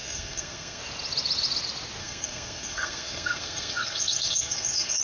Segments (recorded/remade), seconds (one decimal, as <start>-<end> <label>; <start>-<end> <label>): 0.0-0.8 remade; 0.8-2.0 recorded; 2.0-5.0 remade